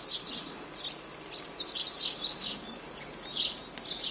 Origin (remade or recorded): recorded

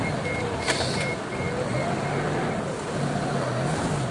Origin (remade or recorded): recorded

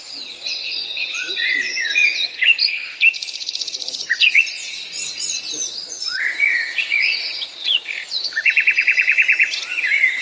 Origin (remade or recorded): remade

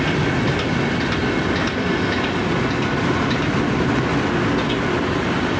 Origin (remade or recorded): recorded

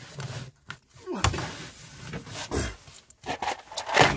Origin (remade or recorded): recorded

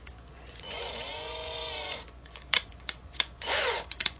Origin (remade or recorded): remade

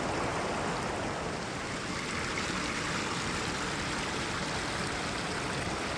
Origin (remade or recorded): recorded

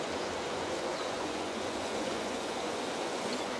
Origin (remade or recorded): remade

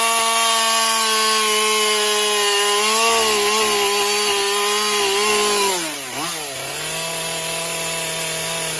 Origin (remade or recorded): recorded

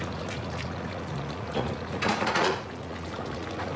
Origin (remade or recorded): remade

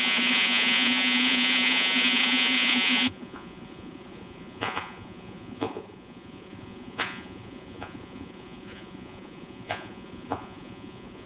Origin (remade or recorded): remade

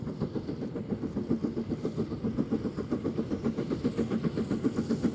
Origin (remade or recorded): recorded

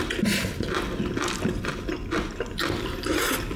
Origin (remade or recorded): recorded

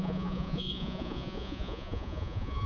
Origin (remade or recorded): remade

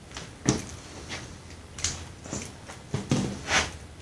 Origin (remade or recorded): recorded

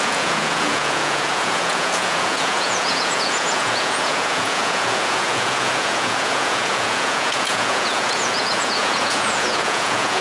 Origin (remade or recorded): remade